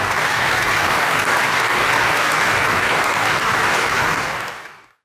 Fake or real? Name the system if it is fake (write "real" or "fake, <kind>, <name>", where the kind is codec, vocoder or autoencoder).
fake, codec, DAC